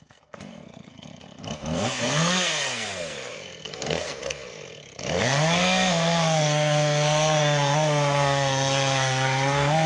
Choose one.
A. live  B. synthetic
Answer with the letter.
B